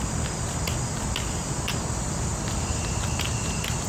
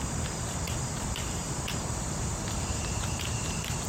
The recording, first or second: first